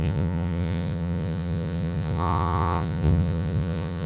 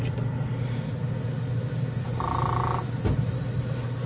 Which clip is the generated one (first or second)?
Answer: first